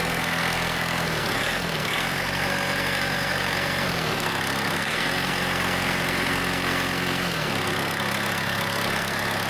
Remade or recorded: remade